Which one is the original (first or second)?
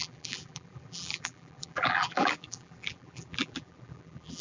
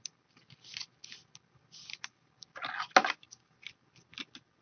second